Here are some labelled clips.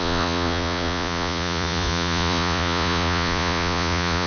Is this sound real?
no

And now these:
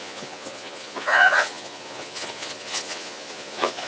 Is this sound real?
no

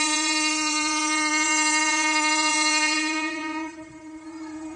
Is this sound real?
no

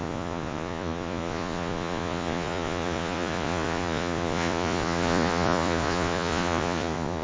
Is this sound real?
no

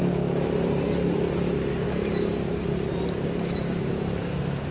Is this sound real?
yes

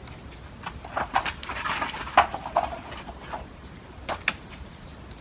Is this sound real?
yes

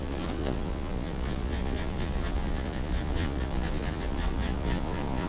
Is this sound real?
no